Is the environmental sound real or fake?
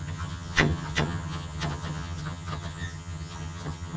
fake